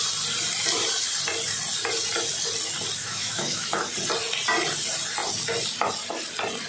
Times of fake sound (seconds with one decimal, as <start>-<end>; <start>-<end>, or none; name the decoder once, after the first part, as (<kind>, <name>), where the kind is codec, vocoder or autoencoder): 3.0-3.7 (autoencoder, DAC-VAE)

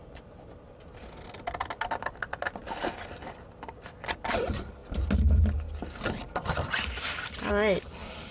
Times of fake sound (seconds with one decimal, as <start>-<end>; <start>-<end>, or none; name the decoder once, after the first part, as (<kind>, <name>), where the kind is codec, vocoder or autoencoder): none

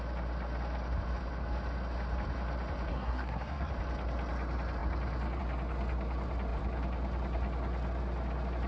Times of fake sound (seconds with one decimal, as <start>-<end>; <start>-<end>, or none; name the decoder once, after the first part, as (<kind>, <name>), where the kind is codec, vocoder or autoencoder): 2.9-3.7 (codec, SNAC)

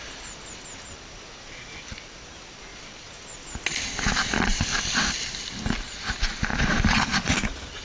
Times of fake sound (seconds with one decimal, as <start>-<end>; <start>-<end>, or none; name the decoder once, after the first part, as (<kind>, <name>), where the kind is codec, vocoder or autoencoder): none

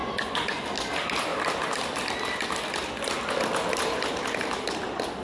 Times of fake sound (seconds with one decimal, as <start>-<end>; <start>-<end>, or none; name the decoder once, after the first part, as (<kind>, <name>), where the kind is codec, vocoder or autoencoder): 0.0-0.6 (vocoder, Vocos)

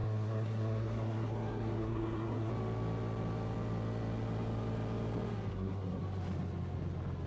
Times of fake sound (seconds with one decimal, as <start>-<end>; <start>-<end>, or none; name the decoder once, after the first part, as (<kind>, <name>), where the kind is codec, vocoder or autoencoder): 0.0-2.5 (codec, SNAC); 5.5-6.0

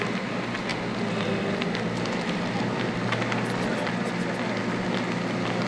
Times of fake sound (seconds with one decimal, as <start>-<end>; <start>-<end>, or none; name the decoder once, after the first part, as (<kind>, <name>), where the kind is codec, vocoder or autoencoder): none